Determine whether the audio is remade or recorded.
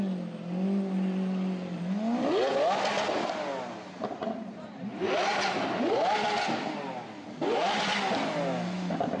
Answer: recorded